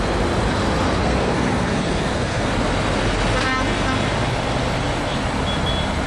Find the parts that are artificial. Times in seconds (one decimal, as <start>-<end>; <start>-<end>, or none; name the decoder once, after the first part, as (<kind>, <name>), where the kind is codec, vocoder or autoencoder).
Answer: 1.0-2.5 (codec, SNAC)